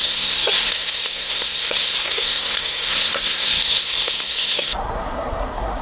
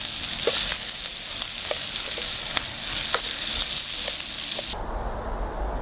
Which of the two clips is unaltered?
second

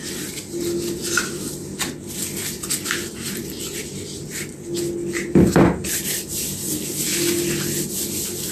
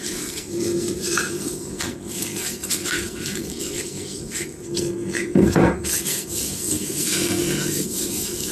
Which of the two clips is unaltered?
first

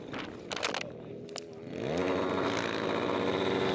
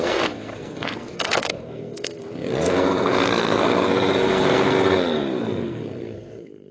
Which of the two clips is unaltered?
first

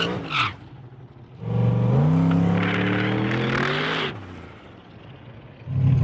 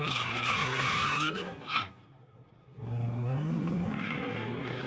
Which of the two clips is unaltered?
first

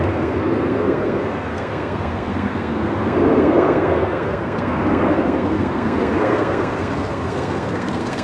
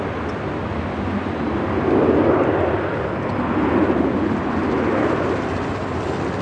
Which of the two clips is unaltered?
second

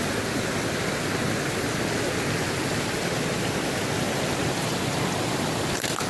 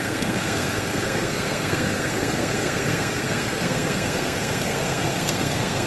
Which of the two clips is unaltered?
first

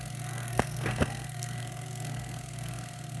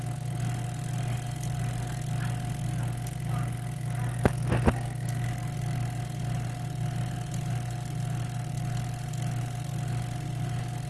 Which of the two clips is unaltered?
second